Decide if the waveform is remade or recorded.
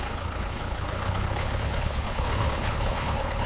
remade